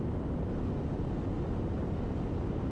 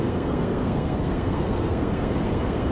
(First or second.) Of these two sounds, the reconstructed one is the second